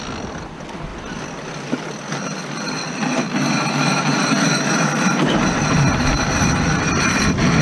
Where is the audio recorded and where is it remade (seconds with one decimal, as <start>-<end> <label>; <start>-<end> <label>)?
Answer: 0.0-7.6 recorded